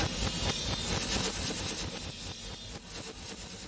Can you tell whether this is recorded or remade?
recorded